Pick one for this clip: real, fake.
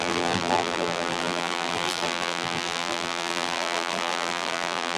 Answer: fake